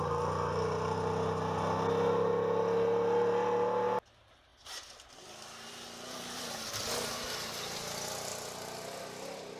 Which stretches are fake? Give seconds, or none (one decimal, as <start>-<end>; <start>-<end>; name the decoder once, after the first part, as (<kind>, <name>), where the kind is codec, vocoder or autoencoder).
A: none